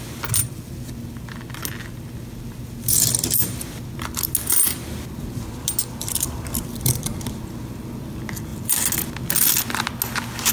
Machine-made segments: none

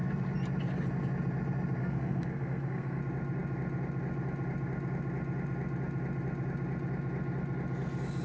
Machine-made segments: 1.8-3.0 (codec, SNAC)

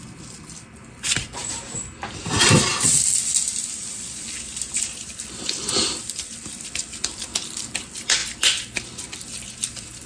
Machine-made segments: 0.0-1.4 (vocoder, BigVGAN v2); 3.9-10.1

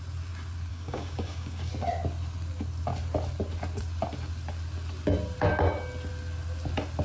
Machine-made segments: 0.7-1.7 (codec, DAC)

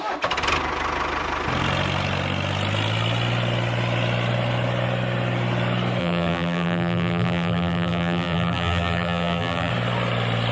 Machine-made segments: 6.0-9.7 (vocoder, BigVGAN v2)

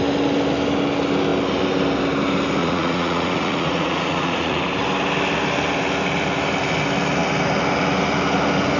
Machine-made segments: 2.6-4.6 (vocoder, Vocos)